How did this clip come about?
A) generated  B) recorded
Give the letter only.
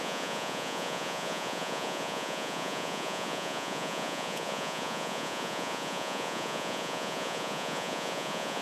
A